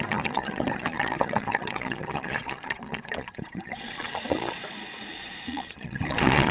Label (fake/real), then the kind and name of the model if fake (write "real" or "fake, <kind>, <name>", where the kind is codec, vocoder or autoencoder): fake, vocoder, Vocos